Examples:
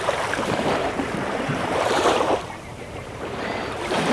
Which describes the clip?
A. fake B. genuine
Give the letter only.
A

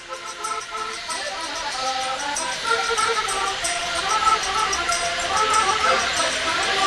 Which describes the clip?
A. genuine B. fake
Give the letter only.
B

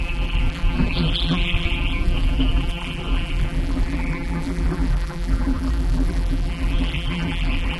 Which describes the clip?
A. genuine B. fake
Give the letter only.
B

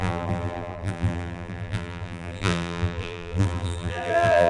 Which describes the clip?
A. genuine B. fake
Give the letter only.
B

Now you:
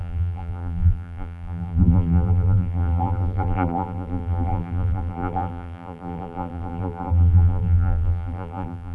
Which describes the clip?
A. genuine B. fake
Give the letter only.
B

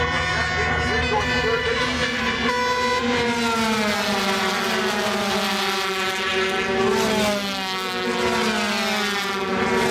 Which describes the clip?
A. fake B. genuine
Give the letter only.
B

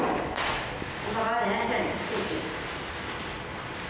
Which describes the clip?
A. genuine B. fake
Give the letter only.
A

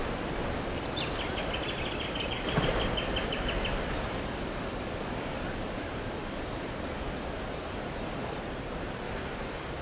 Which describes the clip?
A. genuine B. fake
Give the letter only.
B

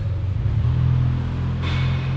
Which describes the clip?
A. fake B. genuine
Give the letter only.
B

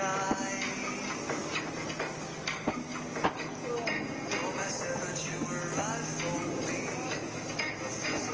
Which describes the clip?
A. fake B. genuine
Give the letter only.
B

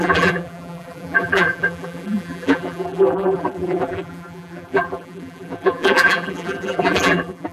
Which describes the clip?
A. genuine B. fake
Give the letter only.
B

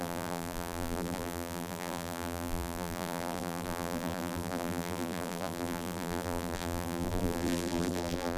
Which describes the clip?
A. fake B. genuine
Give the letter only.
A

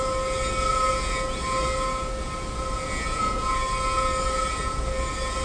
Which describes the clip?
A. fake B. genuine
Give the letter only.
B